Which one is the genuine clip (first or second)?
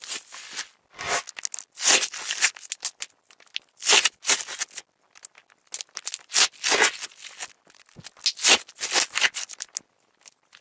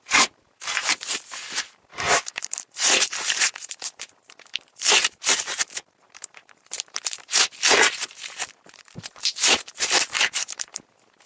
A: first